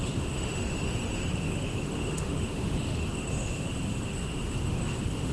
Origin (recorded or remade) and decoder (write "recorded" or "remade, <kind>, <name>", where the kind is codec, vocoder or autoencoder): remade, autoencoder, DAC-VAE